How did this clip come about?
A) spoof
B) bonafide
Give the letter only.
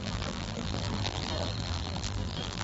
A